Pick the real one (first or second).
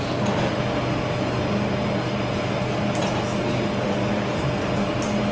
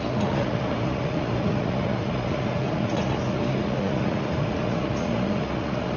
first